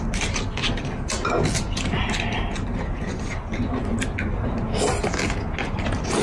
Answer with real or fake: real